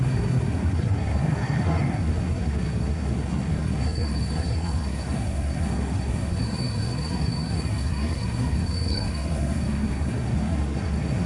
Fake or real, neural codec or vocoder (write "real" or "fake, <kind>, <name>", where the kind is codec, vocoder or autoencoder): fake, codec, SNAC